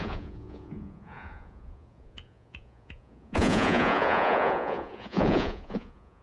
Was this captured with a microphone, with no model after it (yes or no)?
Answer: no